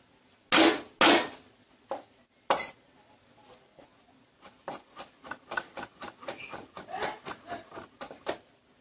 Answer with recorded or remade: recorded